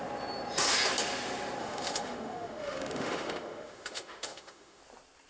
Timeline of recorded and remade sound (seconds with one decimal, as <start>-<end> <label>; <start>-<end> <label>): 0.0-1.6 recorded; 1.6-4.8 remade; 4.8-5.3 recorded